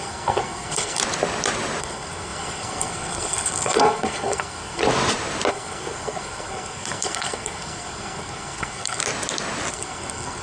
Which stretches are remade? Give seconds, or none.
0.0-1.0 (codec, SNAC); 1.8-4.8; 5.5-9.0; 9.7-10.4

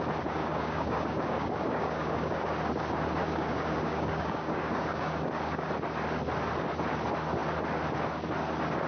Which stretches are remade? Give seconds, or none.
0.4-2.5 (codec, DAC); 3.2-5.7

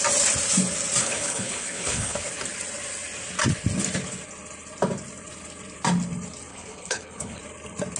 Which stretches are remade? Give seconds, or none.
1.0-2.3 (codec, HILCodec); 6.5-7.4

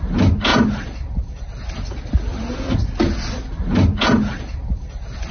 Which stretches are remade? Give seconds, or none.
none

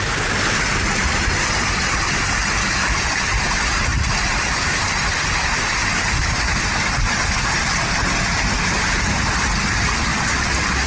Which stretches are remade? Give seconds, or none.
3.9-5.2 (vocoder, BigVGAN v2)

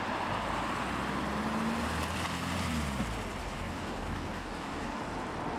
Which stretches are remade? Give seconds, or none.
3.4-5.0 (codec, DAC)

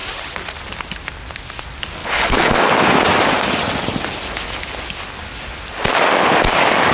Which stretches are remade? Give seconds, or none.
2.0-2.6 (codec, HILCodec)

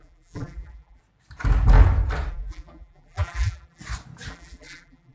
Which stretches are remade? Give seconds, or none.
0.0-1.0 (vocoder, BigVGAN v2); 2.3-3.8; 4.3-5.1